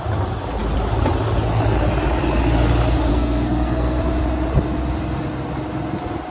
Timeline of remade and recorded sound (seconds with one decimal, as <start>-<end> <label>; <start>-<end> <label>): 0.0-3.1 recorded; 3.1-4.0 remade; 4.0-6.3 recorded